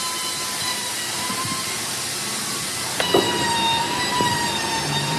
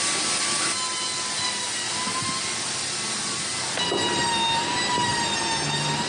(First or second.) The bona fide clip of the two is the second